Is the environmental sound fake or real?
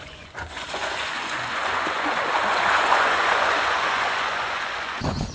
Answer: fake